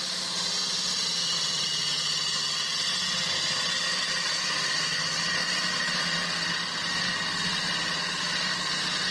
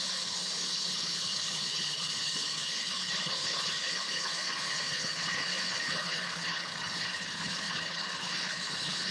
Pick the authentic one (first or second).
first